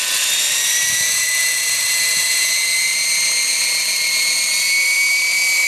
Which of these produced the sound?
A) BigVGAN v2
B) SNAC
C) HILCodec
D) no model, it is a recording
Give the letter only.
A